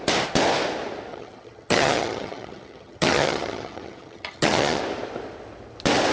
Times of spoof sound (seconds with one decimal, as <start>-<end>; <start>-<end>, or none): 1.1-4.8